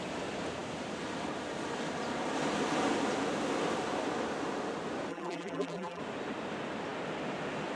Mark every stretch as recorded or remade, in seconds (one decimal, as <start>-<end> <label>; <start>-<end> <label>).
0.0-5.1 recorded; 5.1-6.0 remade; 6.0-7.8 recorded

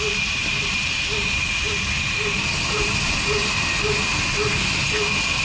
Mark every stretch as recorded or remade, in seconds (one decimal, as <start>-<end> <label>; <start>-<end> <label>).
0.0-5.4 recorded

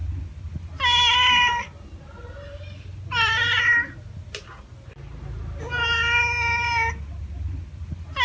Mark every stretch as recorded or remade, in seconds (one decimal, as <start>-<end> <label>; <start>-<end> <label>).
0.0-8.2 recorded

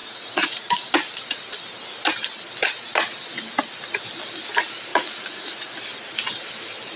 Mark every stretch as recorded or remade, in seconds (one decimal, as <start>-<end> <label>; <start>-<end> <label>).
0.0-0.9 remade; 0.9-4.9 recorded; 4.9-5.8 remade; 5.8-7.0 recorded

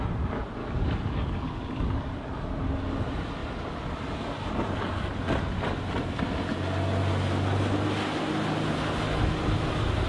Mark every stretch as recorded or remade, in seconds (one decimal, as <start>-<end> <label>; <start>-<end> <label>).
0.0-0.6 recorded; 0.6-2.2 remade; 2.2-10.1 recorded

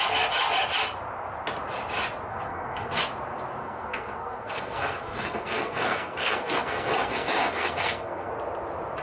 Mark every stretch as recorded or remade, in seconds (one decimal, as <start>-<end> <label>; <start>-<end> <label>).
0.0-2.3 recorded; 2.3-3.0 remade; 3.0-3.6 recorded; 3.6-8.3 remade; 8.3-9.0 recorded